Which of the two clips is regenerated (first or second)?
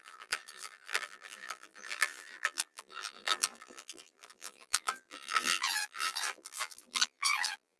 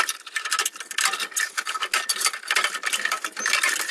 first